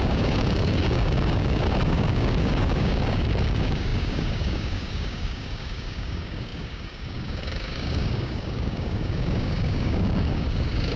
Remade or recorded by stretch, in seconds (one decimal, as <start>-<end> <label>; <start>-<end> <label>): 0.0-11.0 remade